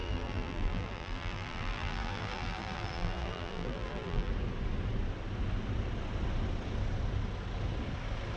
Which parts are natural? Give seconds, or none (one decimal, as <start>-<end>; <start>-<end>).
4.3-8.4